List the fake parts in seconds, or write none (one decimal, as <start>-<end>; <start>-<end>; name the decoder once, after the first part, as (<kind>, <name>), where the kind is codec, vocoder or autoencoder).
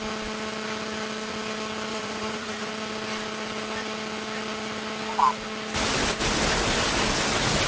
1.9-2.7 (vocoder, Vocos)